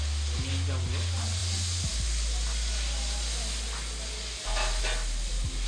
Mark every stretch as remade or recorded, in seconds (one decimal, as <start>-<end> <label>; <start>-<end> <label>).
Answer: 0.0-5.7 recorded